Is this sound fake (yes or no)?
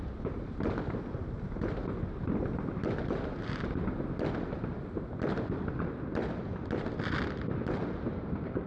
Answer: no